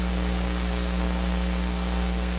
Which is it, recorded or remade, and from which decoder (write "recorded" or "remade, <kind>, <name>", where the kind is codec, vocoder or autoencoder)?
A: remade, codec, SNAC